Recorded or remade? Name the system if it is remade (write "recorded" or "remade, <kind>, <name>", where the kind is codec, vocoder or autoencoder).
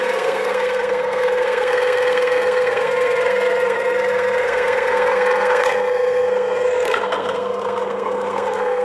remade, codec, SNAC